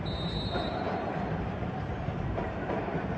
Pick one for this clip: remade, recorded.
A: remade